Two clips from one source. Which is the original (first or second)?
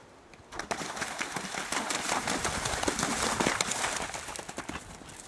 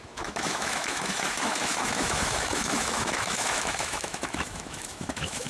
first